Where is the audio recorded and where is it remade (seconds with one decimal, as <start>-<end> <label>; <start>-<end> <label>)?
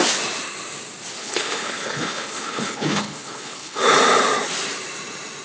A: 0.0-1.2 recorded; 1.2-3.8 remade; 3.8-5.4 recorded